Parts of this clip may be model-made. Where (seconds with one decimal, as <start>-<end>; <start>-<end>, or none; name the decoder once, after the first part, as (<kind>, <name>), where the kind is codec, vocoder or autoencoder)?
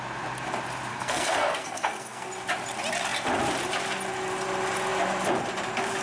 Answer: 0.9-2.3 (codec, SNAC)